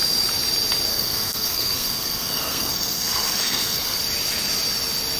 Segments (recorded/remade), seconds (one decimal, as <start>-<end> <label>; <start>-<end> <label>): 0.0-0.9 recorded; 0.9-4.0 remade; 4.0-5.2 recorded